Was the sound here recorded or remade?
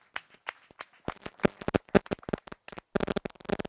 recorded